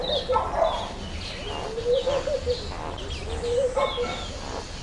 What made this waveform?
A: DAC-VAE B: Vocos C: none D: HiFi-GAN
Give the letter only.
C